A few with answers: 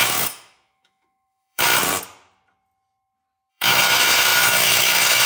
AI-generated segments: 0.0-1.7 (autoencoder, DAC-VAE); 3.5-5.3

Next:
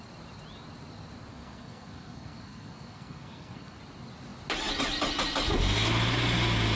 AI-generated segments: 1.3-3.8 (codec, SNAC)